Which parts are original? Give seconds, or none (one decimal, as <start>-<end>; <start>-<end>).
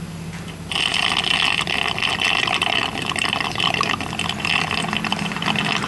0.0-5.9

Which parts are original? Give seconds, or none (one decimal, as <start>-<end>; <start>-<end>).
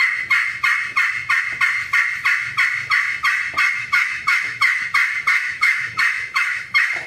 0.0-3.8; 4.8-5.3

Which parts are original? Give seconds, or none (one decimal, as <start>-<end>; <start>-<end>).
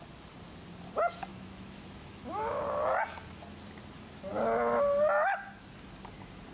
0.0-1.3; 2.6-6.5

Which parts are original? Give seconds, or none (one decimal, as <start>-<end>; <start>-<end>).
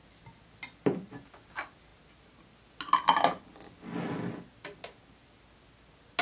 0.0-6.2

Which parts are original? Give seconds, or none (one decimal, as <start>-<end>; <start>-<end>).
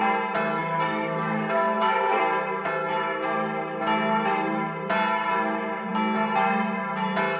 0.0-0.6; 2.2-7.4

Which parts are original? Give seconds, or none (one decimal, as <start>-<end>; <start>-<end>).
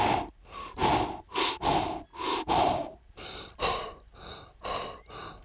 0.0-2.1; 4.6-5.4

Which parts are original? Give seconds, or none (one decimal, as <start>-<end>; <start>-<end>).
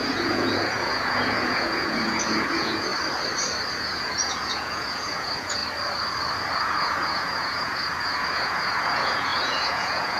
2.9-3.7; 5.6-6.6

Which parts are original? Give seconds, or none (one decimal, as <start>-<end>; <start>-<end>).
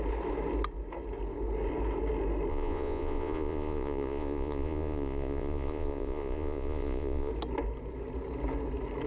0.0-2.5; 7.3-9.1